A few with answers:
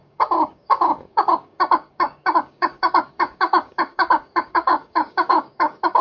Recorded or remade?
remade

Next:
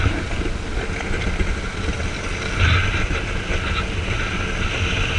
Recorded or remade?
recorded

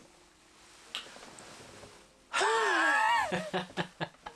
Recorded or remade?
recorded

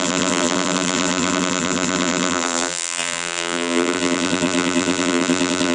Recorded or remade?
remade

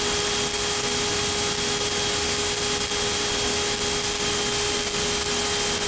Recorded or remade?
recorded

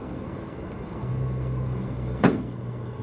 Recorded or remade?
remade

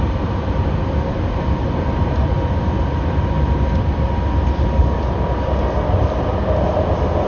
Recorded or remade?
recorded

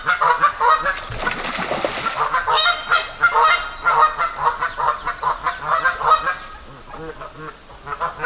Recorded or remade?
recorded